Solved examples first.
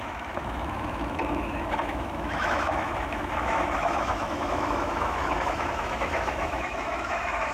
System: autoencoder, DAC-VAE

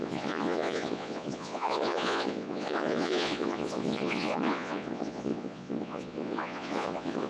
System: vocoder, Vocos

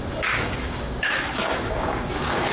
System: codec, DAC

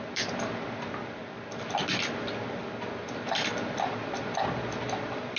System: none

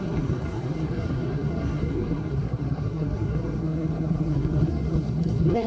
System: codec, SNAC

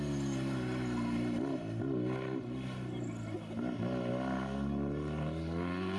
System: none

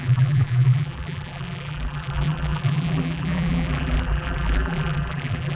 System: vocoder, BigVGAN v2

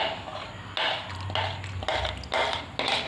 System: none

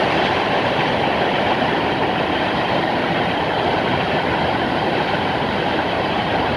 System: vocoder, BigVGAN v2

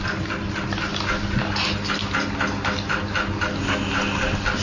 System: none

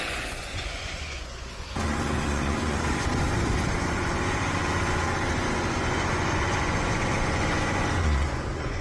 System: vocoder, Vocos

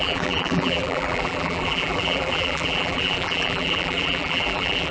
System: vocoder, BigVGAN v2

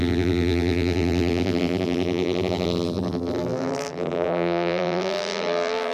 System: vocoder, BigVGAN v2